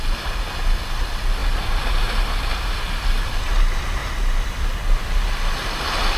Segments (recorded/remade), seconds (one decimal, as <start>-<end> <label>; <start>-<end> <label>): 0.0-6.2 recorded